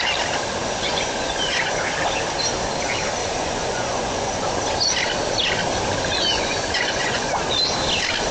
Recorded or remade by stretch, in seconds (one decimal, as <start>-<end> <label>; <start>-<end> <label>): 0.0-0.6 recorded; 0.6-1.8 remade; 1.8-3.2 recorded; 3.2-4.6 remade; 4.6-6.1 recorded; 6.1-7.3 remade; 7.3-8.3 recorded